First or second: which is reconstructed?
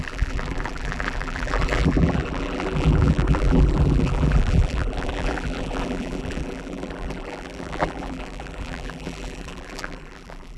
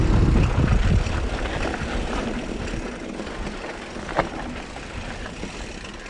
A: first